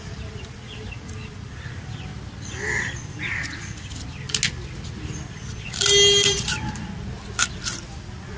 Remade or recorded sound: recorded